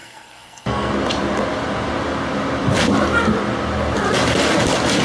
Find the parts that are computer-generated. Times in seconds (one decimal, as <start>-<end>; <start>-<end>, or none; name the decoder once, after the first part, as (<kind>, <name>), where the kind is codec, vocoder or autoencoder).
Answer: 0.0-0.9 (codec, SNAC)